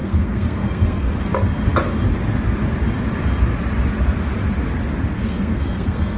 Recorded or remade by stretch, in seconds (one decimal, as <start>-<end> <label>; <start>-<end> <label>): 0.0-1.2 remade; 1.2-5.2 recorded; 5.2-6.2 remade